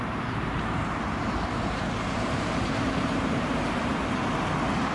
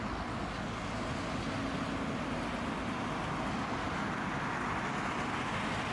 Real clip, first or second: second